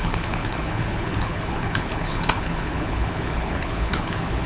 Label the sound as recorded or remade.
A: remade